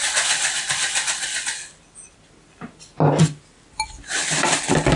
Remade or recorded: recorded